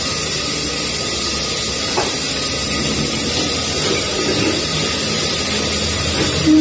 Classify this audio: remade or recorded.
recorded